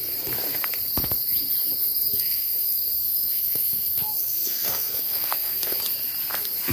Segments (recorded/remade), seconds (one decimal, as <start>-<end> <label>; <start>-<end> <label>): 0.0-2.1 recorded; 2.1-5.8 remade; 5.8-6.7 recorded